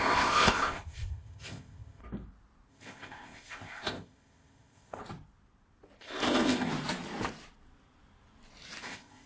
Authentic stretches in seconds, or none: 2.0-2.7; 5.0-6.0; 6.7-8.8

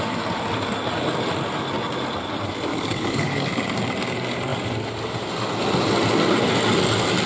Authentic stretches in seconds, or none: 0.0-2.7; 3.5-7.3

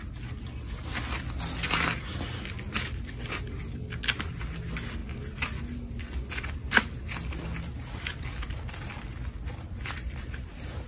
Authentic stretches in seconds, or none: 0.0-10.9